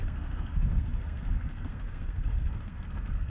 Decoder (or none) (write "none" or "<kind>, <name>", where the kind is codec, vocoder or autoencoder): codec, SNAC